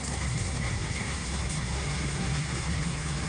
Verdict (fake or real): fake